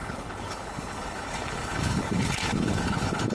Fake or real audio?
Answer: fake